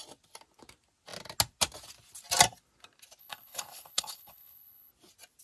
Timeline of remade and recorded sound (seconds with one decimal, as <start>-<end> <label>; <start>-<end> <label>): 0.0-3.2 recorded; 3.2-4.9 remade; 4.9-5.4 recorded